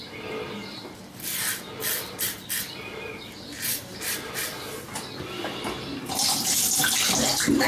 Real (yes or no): yes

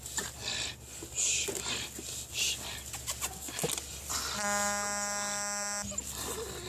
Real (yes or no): yes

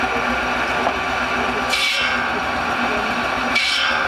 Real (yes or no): yes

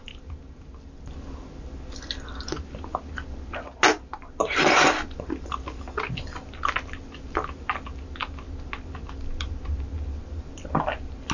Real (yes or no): yes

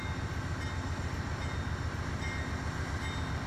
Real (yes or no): yes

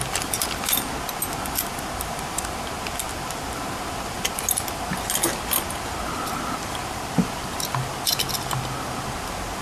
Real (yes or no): yes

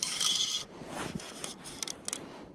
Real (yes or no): no